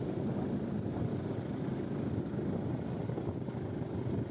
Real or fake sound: real